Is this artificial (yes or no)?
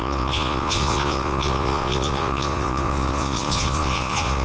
yes